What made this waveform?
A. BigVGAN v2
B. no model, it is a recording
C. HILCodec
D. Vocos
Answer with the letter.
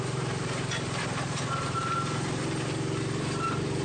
A